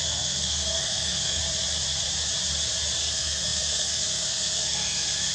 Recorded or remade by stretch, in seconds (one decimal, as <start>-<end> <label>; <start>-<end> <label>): 0.0-1.4 remade; 1.4-3.0 recorded; 3.0-5.3 remade

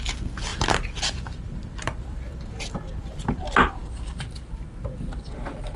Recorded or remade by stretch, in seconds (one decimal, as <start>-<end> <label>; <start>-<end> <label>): 0.0-0.5 recorded; 0.5-3.4 remade; 3.4-3.8 recorded; 3.8-4.4 remade; 4.4-5.8 recorded